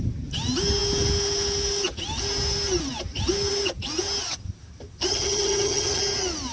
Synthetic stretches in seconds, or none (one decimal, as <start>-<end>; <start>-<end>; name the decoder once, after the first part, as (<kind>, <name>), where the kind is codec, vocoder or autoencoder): 5.1-6.0 (vocoder, HiFi-GAN)